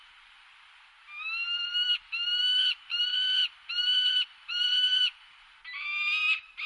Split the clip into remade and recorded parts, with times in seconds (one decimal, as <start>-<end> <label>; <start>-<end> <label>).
0.0-6.7 recorded